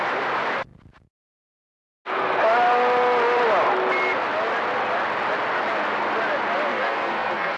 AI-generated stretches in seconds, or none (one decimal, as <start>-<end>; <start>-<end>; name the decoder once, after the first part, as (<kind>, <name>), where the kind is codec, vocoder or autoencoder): 6.7-7.6 (codec, SNAC)